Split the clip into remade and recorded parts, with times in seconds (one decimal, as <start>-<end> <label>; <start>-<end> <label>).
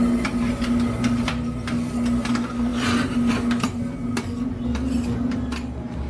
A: 0.0-6.1 recorded